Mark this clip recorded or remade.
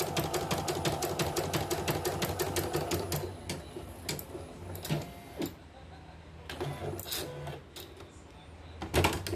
recorded